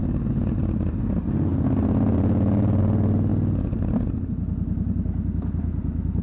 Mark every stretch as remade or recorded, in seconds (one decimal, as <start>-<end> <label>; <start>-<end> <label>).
0.0-6.2 recorded